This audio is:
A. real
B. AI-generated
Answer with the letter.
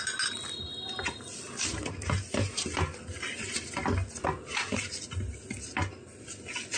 A